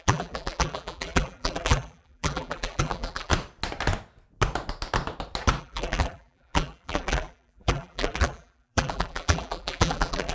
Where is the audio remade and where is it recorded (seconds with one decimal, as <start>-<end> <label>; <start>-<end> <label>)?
0.0-3.3 remade; 3.3-5.6 recorded; 5.6-10.3 remade